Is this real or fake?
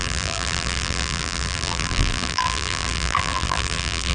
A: fake